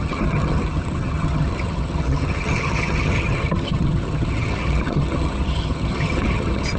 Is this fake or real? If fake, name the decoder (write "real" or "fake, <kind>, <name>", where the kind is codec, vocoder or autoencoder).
fake, vocoder, HiFi-GAN